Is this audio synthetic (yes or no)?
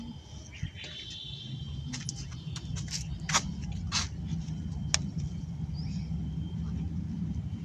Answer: no